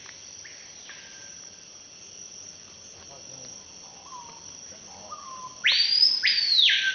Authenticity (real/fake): real